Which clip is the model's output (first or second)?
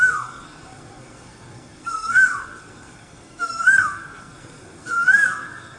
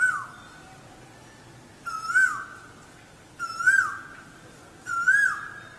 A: first